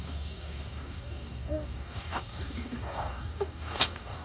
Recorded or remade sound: remade